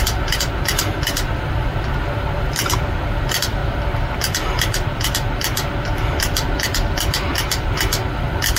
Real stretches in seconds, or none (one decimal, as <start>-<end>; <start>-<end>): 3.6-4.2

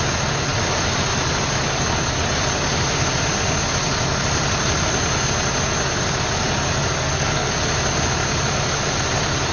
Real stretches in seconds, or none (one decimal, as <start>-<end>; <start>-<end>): 0.0-7.0; 7.5-9.5

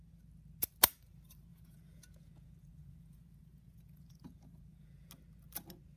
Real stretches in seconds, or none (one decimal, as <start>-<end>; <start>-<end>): 0.0-1.5; 5.1-6.0

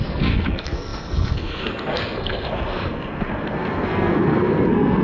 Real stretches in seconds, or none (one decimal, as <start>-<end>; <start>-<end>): none

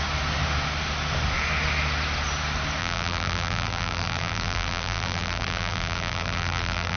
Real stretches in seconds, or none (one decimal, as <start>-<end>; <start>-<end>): 0.0-2.8

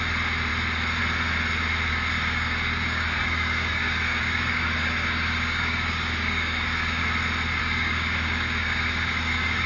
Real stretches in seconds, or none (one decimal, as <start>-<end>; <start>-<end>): 0.0-1.9; 7.0-7.6

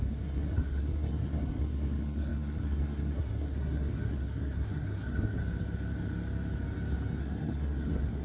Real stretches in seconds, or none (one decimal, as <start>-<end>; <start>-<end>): 5.4-7.2